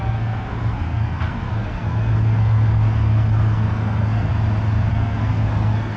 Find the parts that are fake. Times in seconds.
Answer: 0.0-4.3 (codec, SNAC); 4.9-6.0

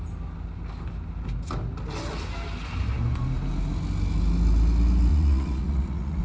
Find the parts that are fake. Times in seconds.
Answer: 5.1-6.2 (vocoder, Vocos)

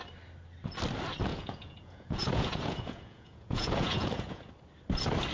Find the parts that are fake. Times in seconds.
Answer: 1.3-4.5 (vocoder, Vocos)

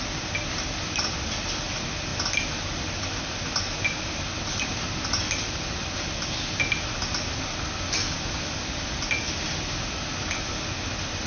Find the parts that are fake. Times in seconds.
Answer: none